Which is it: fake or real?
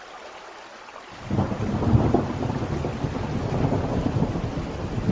real